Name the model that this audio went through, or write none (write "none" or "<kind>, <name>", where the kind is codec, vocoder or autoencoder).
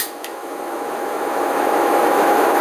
autoencoder, DAC-VAE